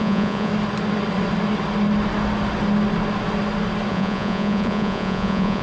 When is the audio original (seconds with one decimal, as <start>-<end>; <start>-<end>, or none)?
0.5-3.9